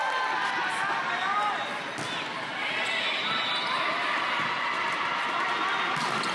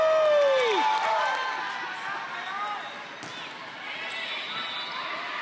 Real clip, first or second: second